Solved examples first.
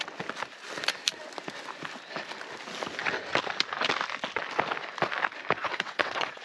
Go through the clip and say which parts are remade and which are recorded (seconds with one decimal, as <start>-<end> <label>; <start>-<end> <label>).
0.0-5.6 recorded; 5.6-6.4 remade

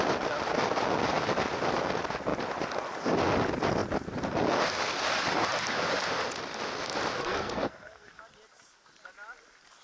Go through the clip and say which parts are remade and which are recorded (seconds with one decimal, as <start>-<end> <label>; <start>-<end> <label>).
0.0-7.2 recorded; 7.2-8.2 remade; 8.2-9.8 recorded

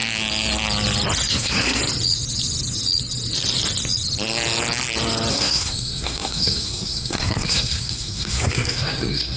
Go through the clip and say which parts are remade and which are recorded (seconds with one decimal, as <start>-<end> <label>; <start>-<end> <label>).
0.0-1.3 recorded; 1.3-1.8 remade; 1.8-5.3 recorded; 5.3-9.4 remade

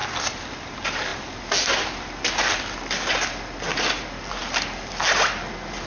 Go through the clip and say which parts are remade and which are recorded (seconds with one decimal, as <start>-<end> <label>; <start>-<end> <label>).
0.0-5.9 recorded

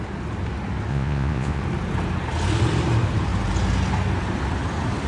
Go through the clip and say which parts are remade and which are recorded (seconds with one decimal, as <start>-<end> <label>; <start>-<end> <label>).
0.0-0.9 recorded; 0.9-1.6 remade; 1.6-5.1 recorded

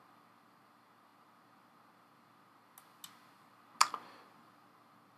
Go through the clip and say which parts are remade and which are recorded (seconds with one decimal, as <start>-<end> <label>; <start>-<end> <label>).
0.0-5.2 recorded

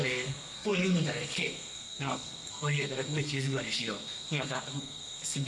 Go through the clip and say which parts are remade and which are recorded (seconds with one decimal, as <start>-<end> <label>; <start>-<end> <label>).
0.0-5.5 remade

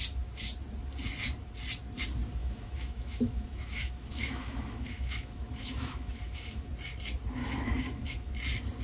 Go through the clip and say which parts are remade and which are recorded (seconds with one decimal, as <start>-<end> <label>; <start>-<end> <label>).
0.0-2.4 recorded; 2.4-6.7 remade; 6.7-7.4 recorded; 7.4-8.3 remade; 8.3-8.8 recorded